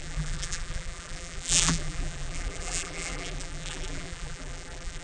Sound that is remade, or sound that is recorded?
remade